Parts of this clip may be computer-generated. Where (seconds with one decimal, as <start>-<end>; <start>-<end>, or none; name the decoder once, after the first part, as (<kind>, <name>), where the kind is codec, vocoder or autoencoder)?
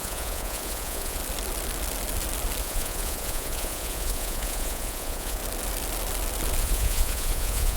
0.0-1.2 (vocoder, Vocos); 2.6-5.4; 6.6-7.8